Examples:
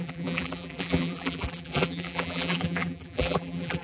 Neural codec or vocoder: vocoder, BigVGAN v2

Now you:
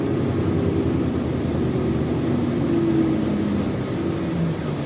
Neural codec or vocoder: none